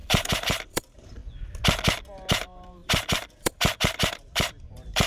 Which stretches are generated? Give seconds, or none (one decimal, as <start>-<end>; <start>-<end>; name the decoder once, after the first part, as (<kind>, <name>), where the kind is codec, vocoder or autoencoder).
0.0-1.2 (vocoder, BigVGAN v2); 2.3-5.1